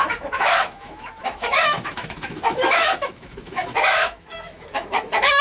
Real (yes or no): no